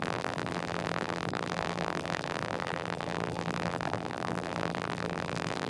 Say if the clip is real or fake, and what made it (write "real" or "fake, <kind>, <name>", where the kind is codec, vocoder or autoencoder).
fake, vocoder, BigVGAN v2